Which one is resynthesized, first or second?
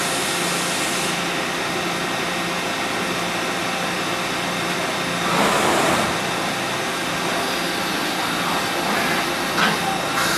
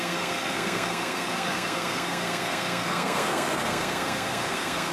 second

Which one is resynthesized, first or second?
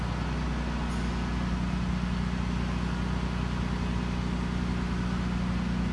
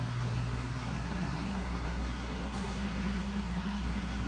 second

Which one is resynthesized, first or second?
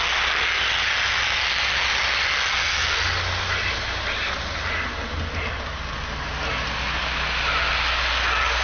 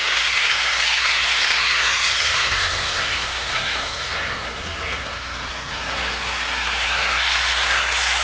second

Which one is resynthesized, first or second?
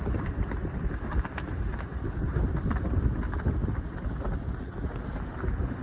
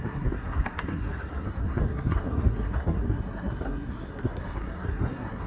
second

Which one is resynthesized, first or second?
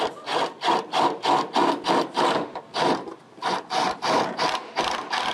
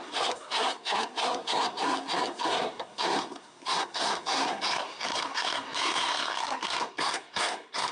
second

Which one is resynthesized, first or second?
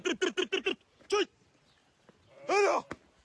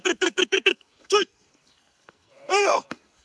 second